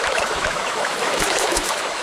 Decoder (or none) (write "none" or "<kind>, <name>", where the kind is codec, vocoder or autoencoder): autoencoder, DAC-VAE